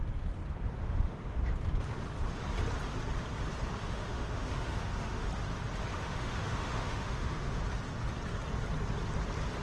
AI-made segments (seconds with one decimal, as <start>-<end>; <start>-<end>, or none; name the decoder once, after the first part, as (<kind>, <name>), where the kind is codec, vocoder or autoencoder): 0.8-1.4 (autoencoder, DAC-VAE); 3.8-5.3; 5.9-7.6